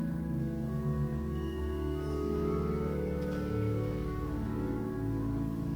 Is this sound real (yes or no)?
no